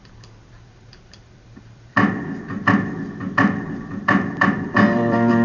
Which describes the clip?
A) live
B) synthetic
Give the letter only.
B